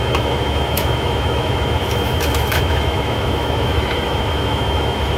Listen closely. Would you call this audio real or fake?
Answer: fake